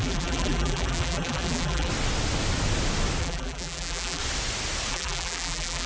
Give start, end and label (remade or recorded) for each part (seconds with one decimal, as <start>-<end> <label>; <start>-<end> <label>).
0.0-1.9 remade; 1.9-3.2 recorded; 3.2-4.2 remade; 4.2-4.9 recorded; 4.9-5.9 remade